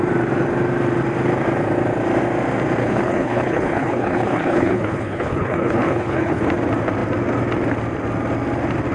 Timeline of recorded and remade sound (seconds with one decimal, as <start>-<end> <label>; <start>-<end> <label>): 0.0-2.8 recorded; 2.8-6.4 remade; 6.4-8.9 recorded